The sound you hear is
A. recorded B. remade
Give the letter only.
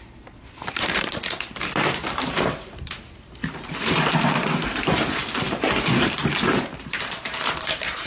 B